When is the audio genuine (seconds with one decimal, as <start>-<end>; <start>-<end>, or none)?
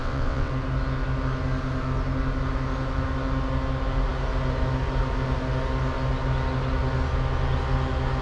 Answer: 0.5-8.2